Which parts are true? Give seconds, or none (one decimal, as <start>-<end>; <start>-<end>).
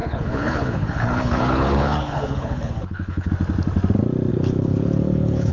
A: 3.3-4.3